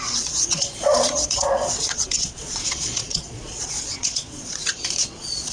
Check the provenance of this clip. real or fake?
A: fake